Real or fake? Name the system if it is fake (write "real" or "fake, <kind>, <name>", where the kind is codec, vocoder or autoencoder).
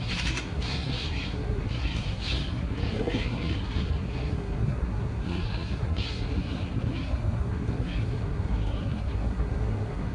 fake, codec, SNAC